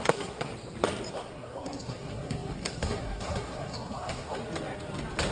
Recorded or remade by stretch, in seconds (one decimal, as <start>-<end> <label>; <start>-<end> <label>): 0.0-0.5 remade; 0.5-1.1 recorded; 1.1-4.4 remade; 4.4-5.3 recorded